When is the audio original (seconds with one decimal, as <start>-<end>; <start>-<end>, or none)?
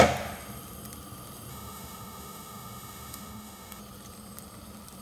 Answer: 0.0-1.5; 3.8-5.0